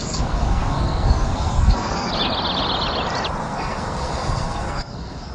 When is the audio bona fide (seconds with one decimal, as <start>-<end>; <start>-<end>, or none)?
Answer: 2.1-3.4